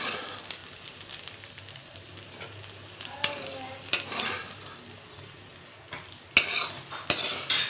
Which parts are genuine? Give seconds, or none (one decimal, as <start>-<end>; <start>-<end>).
0.0-0.6; 1.4-1.8; 4.8-7.7